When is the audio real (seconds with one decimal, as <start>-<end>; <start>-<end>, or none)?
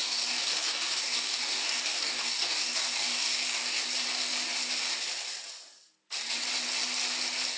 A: 3.8-7.6